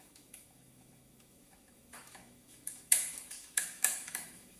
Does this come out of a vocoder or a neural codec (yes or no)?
yes